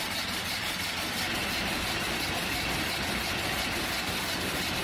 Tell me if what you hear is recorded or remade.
recorded